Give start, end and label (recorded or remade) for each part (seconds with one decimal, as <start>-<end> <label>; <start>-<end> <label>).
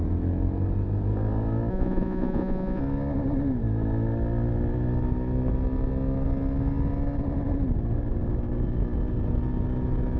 0.0-1.7 recorded; 1.7-2.8 remade; 2.8-10.2 recorded